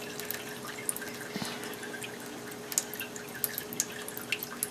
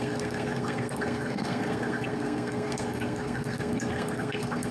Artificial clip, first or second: second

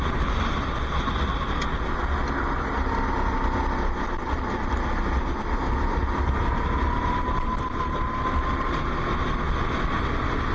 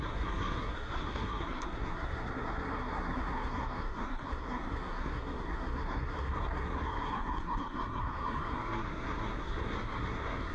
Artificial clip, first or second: second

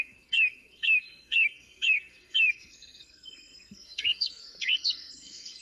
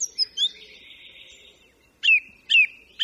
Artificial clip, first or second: first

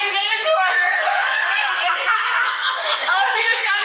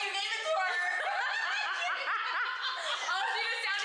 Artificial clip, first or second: first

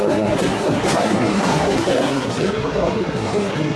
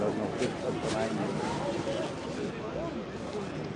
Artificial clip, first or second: first